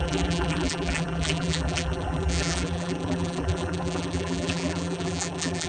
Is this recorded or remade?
remade